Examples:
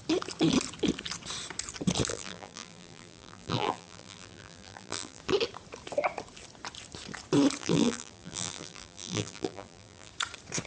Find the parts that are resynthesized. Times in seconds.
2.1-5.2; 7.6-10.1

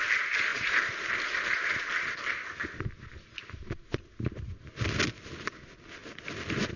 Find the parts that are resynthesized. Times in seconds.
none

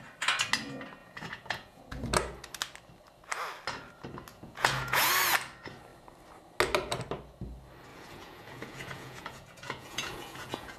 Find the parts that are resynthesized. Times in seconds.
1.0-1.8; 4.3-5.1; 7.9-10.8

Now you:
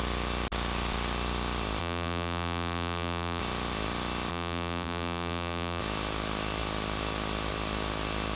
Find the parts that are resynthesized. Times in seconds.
1.8-3.4; 4.3-5.8

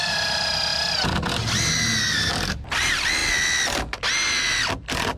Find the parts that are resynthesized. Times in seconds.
none

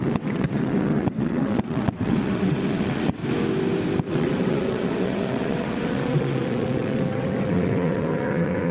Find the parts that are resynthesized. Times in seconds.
0.0-3.2; 4.1-8.7